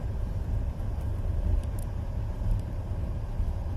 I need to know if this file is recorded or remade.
recorded